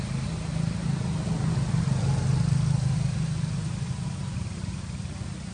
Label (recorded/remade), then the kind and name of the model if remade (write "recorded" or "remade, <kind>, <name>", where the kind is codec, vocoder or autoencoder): recorded